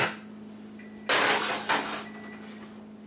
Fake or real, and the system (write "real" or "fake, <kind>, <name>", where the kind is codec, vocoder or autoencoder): real